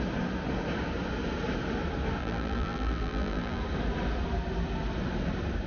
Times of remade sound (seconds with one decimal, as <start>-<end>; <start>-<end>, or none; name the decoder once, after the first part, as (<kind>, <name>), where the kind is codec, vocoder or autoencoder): 2.2-3.6 (vocoder, BigVGAN v2)